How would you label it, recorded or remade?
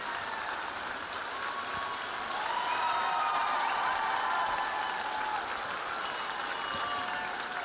recorded